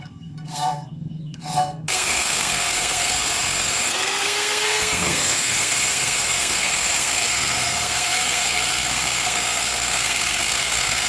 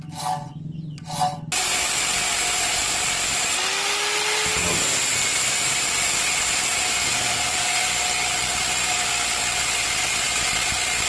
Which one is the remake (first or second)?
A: first